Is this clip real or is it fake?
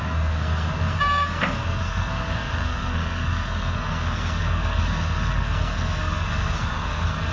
fake